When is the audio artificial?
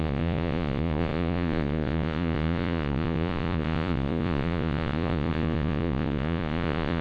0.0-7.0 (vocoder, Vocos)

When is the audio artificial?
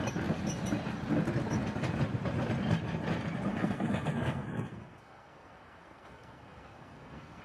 3.5-7.4 (codec, SNAC)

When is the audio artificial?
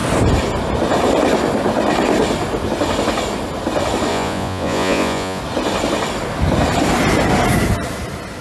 4.1-5.4 (vocoder, Vocos)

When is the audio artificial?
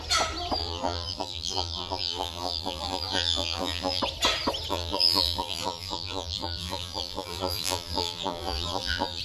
0.6-4.0 (vocoder, BigVGAN v2); 4.7-9.2